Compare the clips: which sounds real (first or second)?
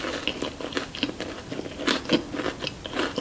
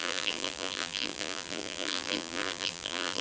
first